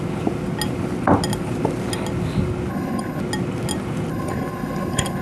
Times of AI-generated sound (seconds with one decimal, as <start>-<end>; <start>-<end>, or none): 2.7-3.2; 4.1-5.2